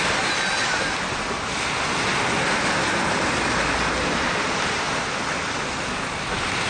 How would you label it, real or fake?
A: real